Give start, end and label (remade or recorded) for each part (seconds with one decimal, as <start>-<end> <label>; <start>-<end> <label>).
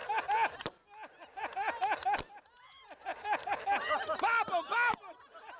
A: 0.0-5.6 recorded